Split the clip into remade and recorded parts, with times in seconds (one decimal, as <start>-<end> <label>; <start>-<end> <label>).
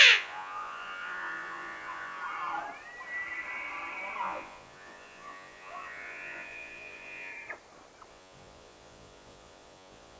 0.0-2.2 remade; 2.2-4.2 recorded; 4.2-7.3 remade; 7.3-8.1 recorded; 8.1-10.2 remade